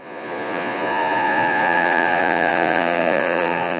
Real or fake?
fake